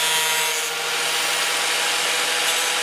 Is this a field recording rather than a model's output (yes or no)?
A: yes